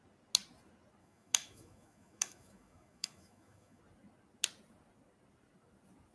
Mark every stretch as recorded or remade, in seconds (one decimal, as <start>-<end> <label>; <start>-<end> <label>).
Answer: 0.0-1.0 recorded; 1.0-3.8 remade; 3.8-6.1 recorded